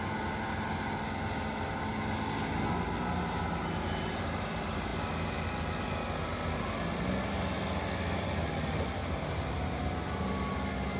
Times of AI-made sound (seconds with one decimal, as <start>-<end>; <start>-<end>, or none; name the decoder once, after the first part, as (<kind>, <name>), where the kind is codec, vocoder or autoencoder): 9.0-9.8 (vocoder, BigVGAN v2)